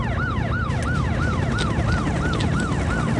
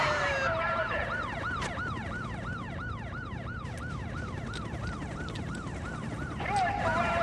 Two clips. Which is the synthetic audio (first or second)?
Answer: second